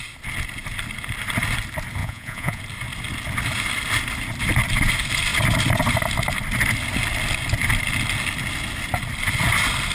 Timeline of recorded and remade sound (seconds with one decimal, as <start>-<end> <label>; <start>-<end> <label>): 0.0-2.0 recorded; 2.0-2.6 remade; 2.6-9.9 recorded